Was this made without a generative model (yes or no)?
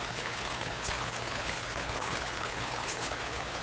no